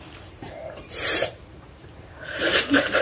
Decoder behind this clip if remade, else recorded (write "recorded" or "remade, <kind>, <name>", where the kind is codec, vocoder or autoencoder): remade, vocoder, BigVGAN v2